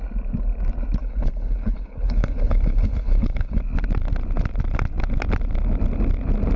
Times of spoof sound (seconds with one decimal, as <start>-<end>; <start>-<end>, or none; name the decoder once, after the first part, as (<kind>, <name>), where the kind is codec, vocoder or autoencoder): 1.0-3.6 (codec, HILCodec)